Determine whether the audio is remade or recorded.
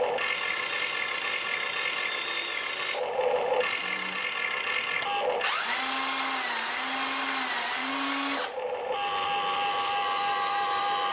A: recorded